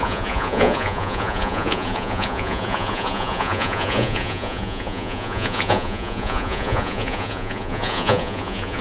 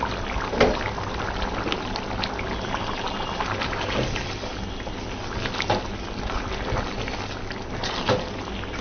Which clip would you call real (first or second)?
second